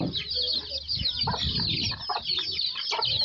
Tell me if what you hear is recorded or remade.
recorded